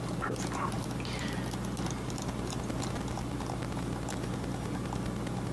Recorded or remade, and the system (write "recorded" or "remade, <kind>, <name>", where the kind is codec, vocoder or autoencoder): recorded